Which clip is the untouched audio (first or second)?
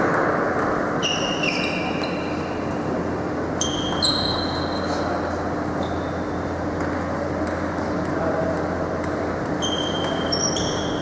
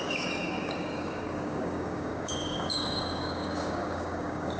first